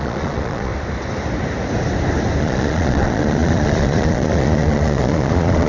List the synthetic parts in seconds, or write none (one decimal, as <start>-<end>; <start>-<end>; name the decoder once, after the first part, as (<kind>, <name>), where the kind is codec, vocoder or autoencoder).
0.0-0.7 (vocoder, Vocos); 2.4-5.7